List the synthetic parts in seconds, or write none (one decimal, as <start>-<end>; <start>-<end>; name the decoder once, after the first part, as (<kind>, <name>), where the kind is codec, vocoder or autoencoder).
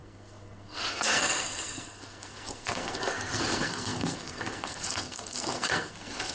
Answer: 0.0-6.3 (codec, SNAC)